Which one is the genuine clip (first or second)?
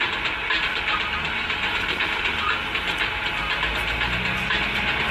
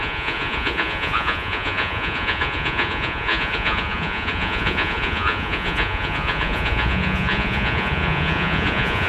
first